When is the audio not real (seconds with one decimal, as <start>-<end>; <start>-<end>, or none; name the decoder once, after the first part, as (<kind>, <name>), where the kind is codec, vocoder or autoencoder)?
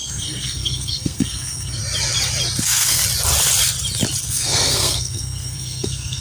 0.0-1.8 (codec, SNAC); 2.6-3.0; 4.2-6.2